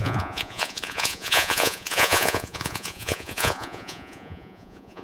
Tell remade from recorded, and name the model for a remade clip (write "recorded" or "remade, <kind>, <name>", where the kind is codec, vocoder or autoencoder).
remade, vocoder, Vocos